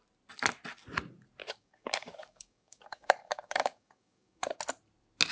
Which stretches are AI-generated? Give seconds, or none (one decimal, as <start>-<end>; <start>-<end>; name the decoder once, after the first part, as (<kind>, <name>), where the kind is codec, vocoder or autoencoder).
1.4-4.6 (codec, DAC)